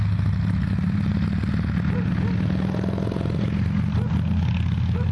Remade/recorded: recorded